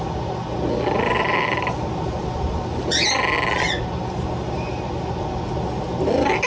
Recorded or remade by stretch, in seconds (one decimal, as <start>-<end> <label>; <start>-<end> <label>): 0.0-6.5 recorded